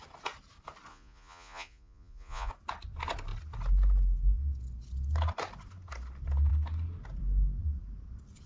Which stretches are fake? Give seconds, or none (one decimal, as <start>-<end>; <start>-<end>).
0.9-2.5